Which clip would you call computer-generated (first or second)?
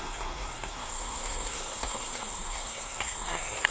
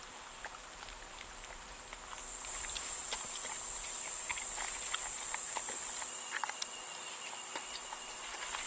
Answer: first